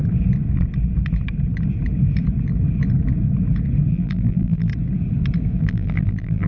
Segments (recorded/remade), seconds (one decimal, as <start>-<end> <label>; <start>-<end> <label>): 0.0-3.9 recorded; 3.9-4.7 remade; 4.7-5.6 recorded; 5.6-6.5 remade

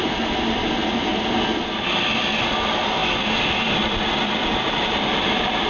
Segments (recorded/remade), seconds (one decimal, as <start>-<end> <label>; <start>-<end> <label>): 0.0-4.4 recorded; 4.4-5.7 remade

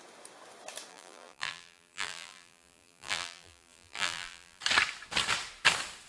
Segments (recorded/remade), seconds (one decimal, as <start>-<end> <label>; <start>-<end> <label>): 0.0-0.9 recorded; 0.9-4.6 remade; 4.6-6.1 recorded

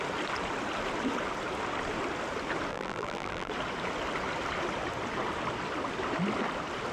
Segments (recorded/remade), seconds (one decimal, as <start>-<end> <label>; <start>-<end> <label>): 0.0-2.7 recorded; 2.7-3.5 remade; 3.5-6.9 recorded

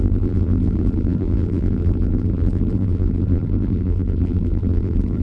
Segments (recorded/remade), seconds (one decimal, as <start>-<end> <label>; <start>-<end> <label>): 0.0-5.2 remade

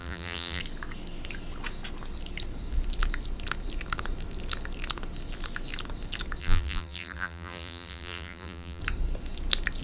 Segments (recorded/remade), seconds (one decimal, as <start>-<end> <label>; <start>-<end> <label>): 0.0-0.6 remade; 0.6-6.4 recorded; 6.4-8.8 remade; 8.8-9.8 recorded

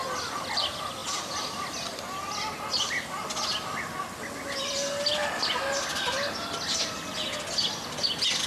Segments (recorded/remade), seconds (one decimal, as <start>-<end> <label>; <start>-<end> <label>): 0.0-8.5 recorded